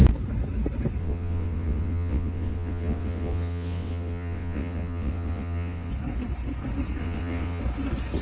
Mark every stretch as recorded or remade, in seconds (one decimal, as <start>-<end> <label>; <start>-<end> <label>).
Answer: 0.0-1.0 recorded; 1.0-5.9 remade; 5.9-7.0 recorded; 7.0-7.6 remade; 7.6-8.2 recorded